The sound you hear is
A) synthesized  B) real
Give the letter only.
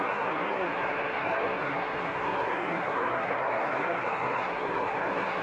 A